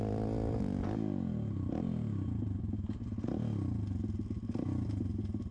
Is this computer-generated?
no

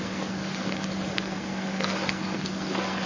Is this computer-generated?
yes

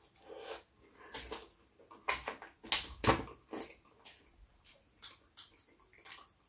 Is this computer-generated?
no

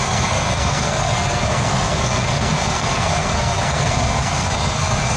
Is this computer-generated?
yes